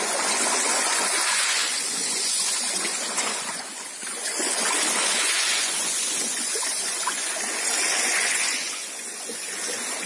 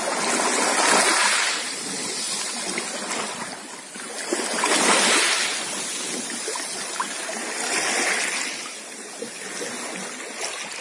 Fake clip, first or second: first